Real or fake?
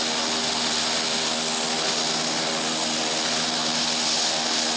real